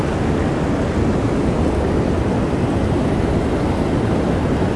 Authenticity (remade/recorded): recorded